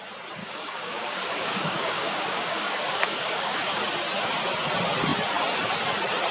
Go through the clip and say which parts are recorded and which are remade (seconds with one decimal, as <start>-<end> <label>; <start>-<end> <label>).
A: 0.0-0.4 recorded; 0.4-3.8 remade; 3.8-6.3 recorded